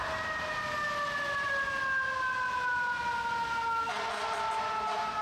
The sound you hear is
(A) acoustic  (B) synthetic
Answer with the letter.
A